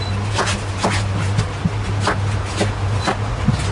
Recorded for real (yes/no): yes